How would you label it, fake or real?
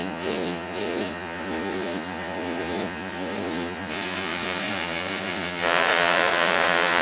fake